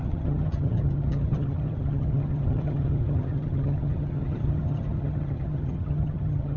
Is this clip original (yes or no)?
no